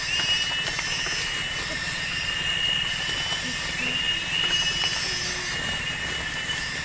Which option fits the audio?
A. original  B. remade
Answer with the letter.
A